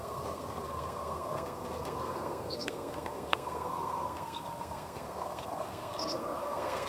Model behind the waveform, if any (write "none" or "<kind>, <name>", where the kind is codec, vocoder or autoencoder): codec, SNAC